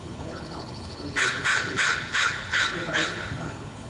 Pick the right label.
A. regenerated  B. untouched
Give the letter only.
A